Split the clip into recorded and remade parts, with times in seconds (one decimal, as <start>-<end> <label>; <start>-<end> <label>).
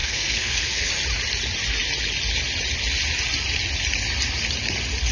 0.0-0.9 remade; 0.9-5.1 recorded